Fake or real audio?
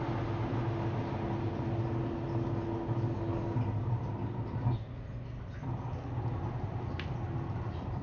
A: real